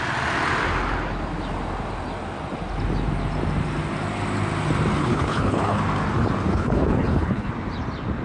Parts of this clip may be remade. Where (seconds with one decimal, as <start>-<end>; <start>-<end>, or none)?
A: 5.0-5.8; 6.5-7.5